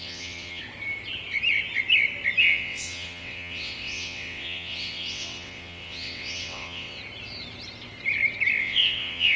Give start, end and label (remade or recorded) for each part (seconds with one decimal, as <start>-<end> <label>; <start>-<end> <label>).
0.0-0.6 remade; 0.6-2.4 recorded; 2.4-7.0 remade; 7.0-8.6 recorded; 8.6-9.4 remade